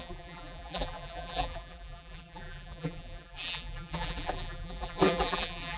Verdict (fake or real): fake